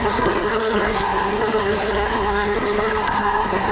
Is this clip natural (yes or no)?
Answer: no